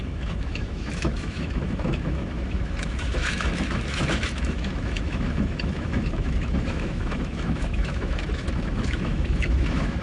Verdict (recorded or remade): remade